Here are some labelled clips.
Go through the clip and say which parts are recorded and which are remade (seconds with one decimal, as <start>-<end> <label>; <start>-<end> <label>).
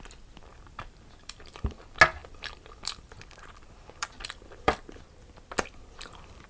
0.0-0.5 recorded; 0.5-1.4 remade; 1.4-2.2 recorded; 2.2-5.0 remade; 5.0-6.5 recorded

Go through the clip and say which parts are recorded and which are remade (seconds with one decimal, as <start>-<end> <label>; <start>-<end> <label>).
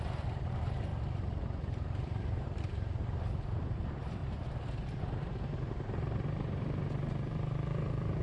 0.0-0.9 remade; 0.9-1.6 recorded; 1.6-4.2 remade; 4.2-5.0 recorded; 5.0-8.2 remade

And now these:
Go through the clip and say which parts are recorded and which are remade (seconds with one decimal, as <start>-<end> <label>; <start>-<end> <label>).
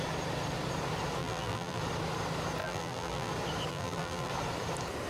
0.0-1.2 recorded; 1.2-1.8 remade; 1.8-2.6 recorded; 2.6-3.3 remade; 3.3-3.7 recorded; 3.7-4.3 remade; 4.3-5.1 recorded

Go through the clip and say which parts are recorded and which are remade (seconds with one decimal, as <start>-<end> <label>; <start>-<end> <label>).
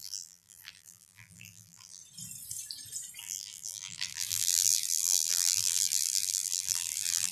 0.0-2.0 remade; 2.0-3.2 recorded; 3.2-7.3 remade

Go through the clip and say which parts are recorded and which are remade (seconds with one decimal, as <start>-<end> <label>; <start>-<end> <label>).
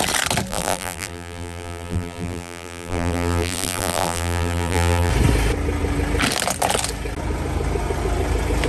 0.0-0.5 recorded; 0.5-5.1 remade; 5.1-8.7 recorded